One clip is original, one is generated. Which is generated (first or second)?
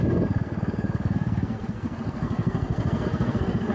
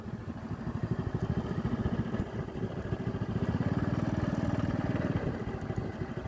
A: first